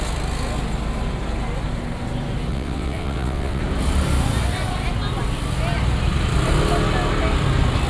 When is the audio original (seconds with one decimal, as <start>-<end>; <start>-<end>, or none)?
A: 0.0-2.5; 3.6-7.9